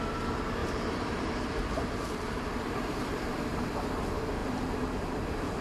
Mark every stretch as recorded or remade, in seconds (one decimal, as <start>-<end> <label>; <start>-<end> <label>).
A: 0.0-0.6 recorded; 0.6-4.0 remade; 4.0-4.4 recorded; 4.4-5.6 remade